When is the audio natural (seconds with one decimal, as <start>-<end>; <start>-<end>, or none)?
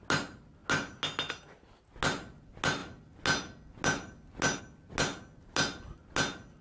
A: 0.0-6.6